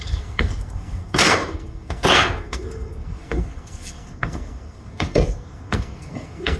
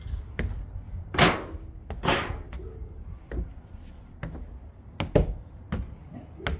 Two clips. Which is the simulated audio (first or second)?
first